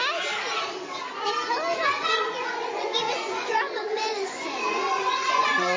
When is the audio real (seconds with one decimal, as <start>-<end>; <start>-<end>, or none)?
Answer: 0.0-2.0